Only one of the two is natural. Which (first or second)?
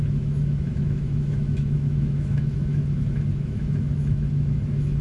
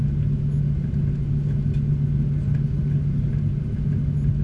second